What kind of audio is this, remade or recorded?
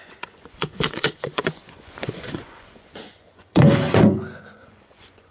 remade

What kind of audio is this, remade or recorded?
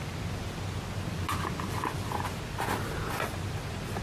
recorded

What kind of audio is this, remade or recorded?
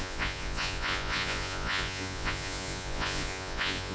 remade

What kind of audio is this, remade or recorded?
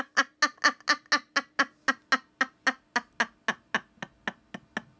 recorded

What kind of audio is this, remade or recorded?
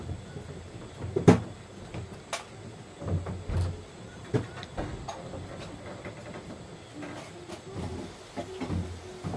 recorded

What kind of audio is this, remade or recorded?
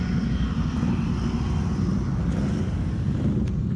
recorded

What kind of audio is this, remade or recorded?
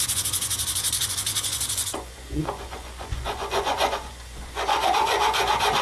remade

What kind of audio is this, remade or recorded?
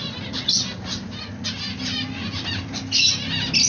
recorded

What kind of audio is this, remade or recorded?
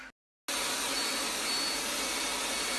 recorded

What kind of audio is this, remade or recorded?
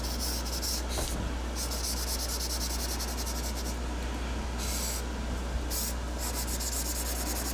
recorded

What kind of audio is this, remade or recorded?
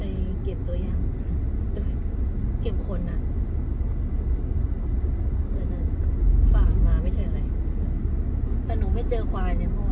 recorded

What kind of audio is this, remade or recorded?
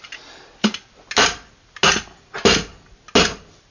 recorded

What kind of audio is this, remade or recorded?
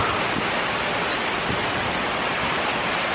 recorded